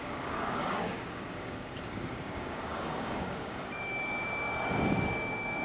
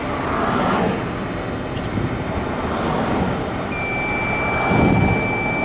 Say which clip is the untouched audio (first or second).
second